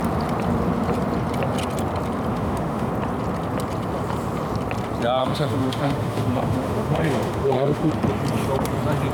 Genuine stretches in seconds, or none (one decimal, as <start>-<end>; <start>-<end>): 0.0-2.3; 2.9-5.2; 7.9-9.1